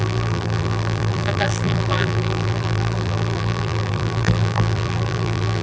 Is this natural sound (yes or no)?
no